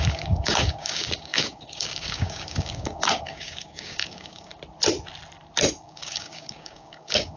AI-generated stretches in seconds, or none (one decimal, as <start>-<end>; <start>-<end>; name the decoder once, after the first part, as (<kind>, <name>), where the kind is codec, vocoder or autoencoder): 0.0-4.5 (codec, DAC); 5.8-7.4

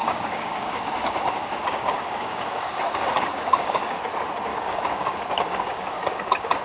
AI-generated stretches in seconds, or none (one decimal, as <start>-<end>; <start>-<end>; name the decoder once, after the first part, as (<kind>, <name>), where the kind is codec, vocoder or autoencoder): 0.0-4.0 (codec, DAC); 4.5-6.6

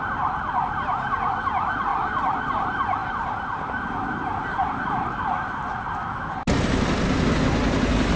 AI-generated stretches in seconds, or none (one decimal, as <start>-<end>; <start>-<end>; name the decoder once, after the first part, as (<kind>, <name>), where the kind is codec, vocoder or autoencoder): none

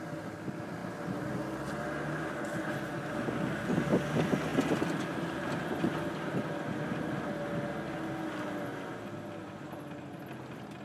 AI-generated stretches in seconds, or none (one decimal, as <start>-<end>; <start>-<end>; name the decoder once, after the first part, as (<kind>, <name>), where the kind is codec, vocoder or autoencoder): none